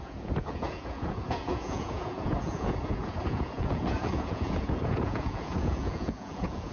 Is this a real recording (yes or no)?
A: no